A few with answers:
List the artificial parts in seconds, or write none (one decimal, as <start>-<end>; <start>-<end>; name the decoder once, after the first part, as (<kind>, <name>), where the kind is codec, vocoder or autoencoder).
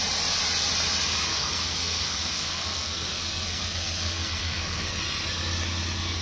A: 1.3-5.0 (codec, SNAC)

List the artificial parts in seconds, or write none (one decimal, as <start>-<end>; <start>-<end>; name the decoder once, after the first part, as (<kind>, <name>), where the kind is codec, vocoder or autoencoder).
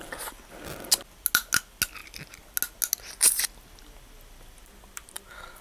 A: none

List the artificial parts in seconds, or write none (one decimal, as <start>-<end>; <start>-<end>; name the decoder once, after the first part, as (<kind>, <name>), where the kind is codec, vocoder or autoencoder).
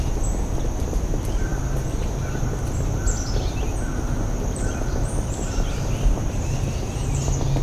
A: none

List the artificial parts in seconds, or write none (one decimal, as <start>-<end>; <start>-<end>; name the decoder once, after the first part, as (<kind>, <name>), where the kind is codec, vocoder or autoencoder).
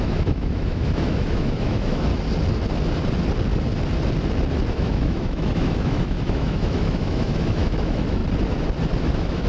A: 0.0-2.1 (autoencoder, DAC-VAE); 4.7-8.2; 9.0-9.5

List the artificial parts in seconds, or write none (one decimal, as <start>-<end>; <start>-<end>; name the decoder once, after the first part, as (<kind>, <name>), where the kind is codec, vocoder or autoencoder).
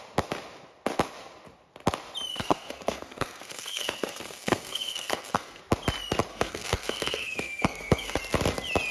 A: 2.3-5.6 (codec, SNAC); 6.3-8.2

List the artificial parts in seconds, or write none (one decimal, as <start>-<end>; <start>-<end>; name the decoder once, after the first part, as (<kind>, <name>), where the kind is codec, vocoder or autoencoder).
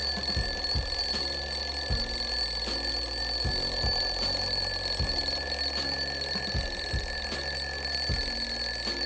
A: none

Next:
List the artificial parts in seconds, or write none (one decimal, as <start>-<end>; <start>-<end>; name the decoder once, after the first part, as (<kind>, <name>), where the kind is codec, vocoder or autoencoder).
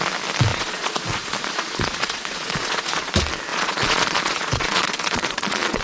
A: 0.5-3.1 (vocoder, Vocos); 3.5-5.8